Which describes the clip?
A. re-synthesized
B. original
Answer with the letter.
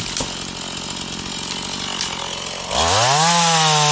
B